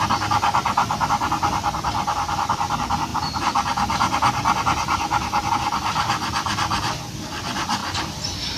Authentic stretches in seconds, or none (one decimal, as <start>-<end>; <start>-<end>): 0.0-8.6